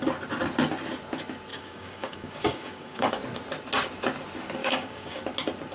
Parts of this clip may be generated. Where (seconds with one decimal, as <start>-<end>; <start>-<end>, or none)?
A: 1.5-3.1; 4.6-5.2